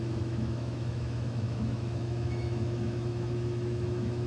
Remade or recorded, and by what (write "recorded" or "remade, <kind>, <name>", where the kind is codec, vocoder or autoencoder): remade, autoencoder, DAC-VAE